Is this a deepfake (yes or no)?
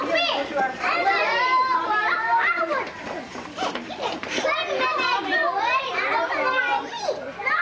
yes